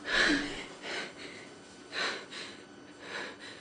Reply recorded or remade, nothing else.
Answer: recorded